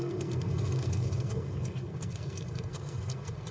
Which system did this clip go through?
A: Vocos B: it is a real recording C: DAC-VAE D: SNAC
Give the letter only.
D